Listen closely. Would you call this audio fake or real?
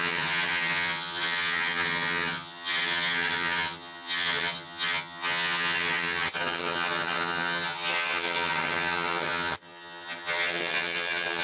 fake